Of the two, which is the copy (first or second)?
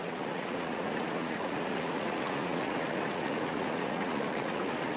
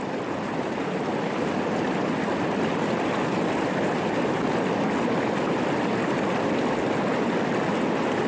first